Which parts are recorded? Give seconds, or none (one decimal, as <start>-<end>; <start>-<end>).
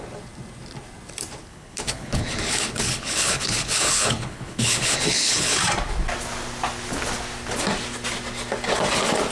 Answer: 0.0-1.4; 5.6-9.3